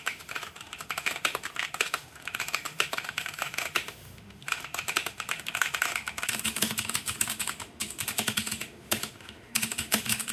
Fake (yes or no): yes